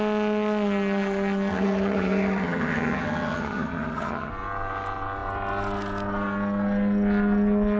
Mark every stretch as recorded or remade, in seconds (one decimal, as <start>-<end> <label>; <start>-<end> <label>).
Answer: 0.0-1.5 recorded; 1.5-4.3 remade; 4.3-7.8 recorded